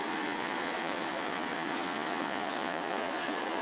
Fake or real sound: fake